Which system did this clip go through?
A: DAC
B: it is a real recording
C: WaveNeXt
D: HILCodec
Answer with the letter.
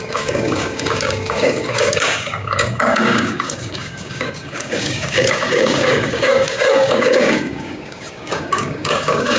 A